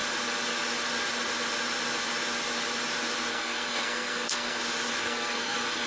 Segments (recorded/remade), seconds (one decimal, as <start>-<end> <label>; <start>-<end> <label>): 0.0-3.3 recorded; 3.3-4.6 remade; 4.6-5.0 recorded; 5.0-5.9 remade